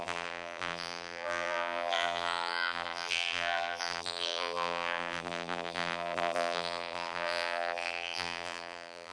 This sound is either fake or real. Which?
fake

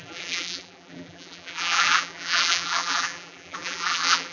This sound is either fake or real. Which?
fake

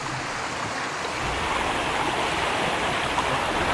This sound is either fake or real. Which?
real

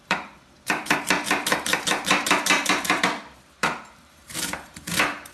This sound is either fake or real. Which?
fake